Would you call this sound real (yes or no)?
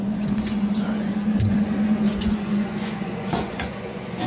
no